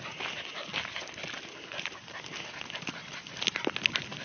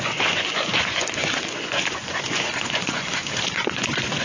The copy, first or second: second